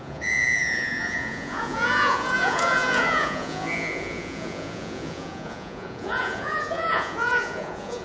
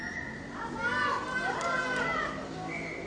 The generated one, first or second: first